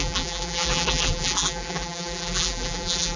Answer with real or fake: fake